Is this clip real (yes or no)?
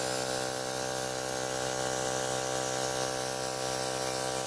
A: yes